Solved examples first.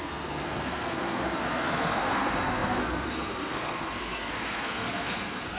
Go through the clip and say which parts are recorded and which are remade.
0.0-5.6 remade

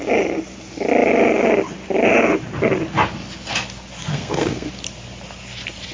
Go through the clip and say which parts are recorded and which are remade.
0.0-4.1 recorded; 4.1-4.7 remade; 4.7-5.9 recorded